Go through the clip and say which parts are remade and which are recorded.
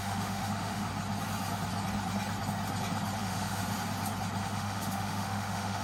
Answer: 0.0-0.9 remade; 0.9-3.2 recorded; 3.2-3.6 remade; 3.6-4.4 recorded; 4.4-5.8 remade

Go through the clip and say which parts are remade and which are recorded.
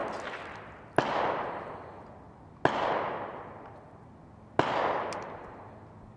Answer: 0.0-6.2 recorded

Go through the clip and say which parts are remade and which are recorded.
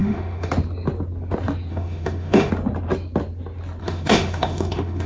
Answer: 0.0-0.5 remade; 0.5-1.7 recorded; 1.7-2.5 remade; 2.5-3.8 recorded; 3.8-5.1 remade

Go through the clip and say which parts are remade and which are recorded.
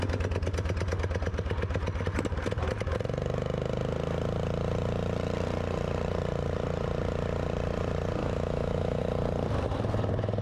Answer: 0.0-8.2 recorded; 8.2-9.0 remade; 9.0-10.4 recorded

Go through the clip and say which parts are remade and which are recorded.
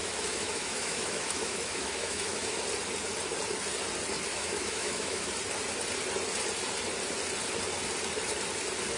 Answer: 0.0-2.6 remade; 2.6-4.3 recorded; 4.3-5.3 remade; 5.3-9.0 recorded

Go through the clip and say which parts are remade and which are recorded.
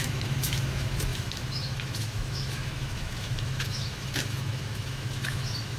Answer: 0.0-5.8 remade